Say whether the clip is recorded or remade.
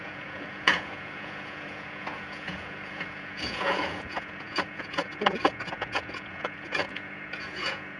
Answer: remade